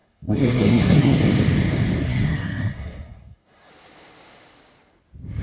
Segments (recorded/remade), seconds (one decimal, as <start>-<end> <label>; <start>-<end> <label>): 0.0-1.2 remade; 1.2-2.0 recorded; 2.0-3.7 remade; 3.7-5.4 recorded